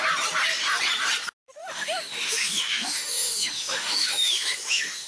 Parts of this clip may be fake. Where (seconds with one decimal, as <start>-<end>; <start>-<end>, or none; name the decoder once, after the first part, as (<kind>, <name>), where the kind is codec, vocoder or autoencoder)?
1.6-5.1 (autoencoder, DAC-VAE)